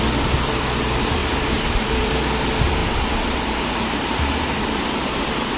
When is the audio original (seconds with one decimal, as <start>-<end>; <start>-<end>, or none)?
0.0-1.2; 2.1-2.8; 4.8-5.6